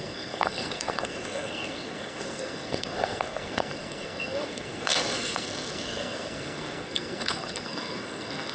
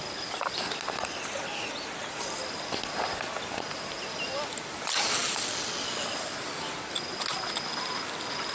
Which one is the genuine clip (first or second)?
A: second